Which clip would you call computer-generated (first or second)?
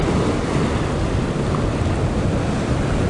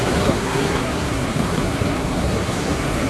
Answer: second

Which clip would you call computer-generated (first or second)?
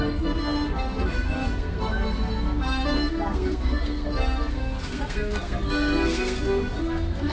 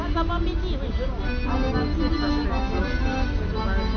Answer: first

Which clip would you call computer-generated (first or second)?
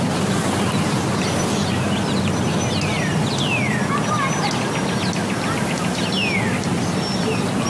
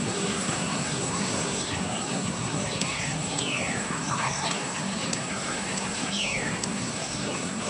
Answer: second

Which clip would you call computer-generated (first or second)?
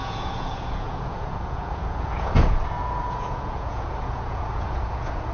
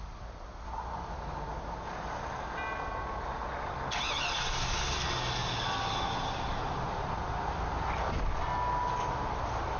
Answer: first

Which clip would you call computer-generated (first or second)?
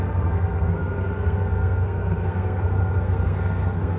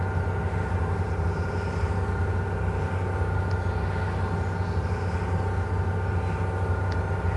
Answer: first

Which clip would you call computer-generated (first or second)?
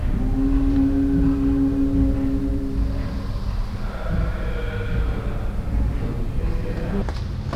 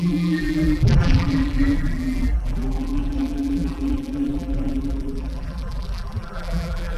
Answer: second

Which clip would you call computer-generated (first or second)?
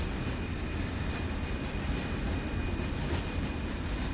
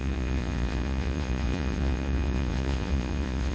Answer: second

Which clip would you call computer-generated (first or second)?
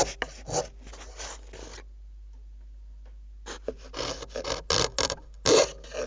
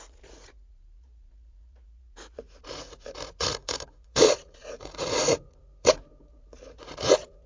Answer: second